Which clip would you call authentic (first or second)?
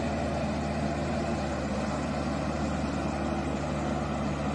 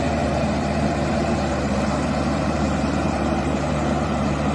first